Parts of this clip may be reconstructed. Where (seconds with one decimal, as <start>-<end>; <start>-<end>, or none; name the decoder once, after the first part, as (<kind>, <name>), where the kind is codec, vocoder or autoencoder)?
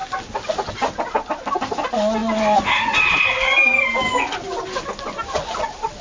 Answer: none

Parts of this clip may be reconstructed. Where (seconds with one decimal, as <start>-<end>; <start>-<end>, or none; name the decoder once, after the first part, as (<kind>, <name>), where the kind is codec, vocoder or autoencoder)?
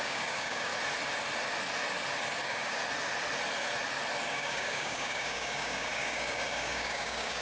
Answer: 0.0-0.7 (codec, DAC); 2.4-2.8; 4.3-7.4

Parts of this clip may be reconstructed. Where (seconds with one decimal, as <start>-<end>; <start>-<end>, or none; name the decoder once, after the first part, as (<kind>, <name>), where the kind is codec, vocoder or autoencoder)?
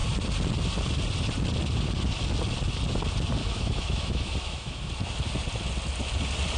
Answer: 3.4-4.9 (autoencoder, DAC-VAE)